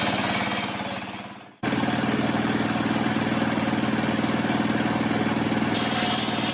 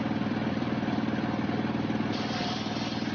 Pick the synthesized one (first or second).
second